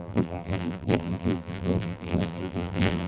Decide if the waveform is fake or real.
fake